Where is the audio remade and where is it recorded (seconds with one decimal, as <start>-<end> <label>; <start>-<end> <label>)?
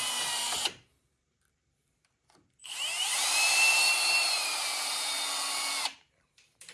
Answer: 0.0-5.1 remade; 5.1-5.7 recorded; 5.7-6.7 remade